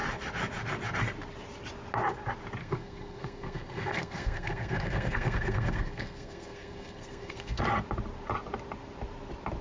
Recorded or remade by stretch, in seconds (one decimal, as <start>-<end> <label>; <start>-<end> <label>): 0.0-2.6 recorded; 2.6-7.6 remade; 7.6-9.6 recorded